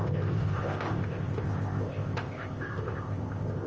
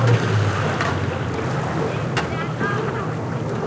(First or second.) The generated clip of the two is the first